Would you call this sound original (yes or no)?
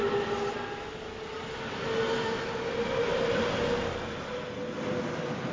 yes